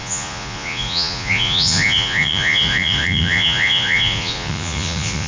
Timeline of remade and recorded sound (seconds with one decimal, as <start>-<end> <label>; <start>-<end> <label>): 0.0-5.3 remade